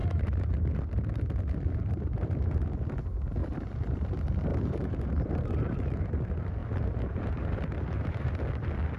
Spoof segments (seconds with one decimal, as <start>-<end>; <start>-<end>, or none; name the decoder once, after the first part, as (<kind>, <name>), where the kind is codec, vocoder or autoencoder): 0.0-2.7 (vocoder, BigVGAN v2); 3.4-4.1; 4.5-6.0; 6.6-8.4